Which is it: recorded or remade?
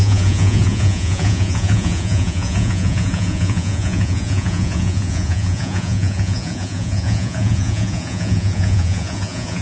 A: remade